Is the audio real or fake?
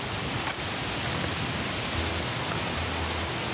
real